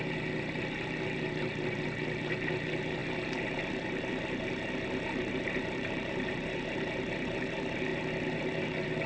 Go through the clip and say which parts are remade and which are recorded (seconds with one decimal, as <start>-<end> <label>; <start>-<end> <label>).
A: 0.0-9.1 recorded